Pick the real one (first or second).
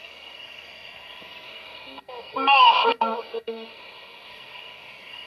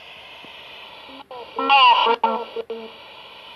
second